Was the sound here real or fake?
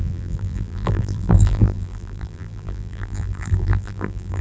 fake